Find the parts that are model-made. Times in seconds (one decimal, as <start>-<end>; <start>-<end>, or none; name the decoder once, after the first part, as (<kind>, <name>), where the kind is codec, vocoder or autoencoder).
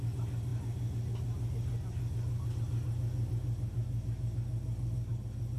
none